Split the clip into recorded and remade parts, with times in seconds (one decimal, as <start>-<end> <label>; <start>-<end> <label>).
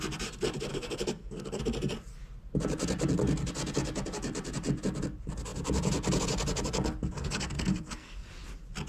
0.0-0.7 recorded; 0.7-1.6 remade; 1.6-7.2 recorded; 7.2-8.3 remade; 8.3-8.9 recorded